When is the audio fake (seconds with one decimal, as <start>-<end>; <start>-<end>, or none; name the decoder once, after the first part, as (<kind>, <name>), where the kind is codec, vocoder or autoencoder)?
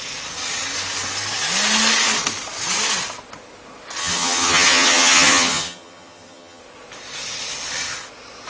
4.0-6.6 (vocoder, HiFi-GAN)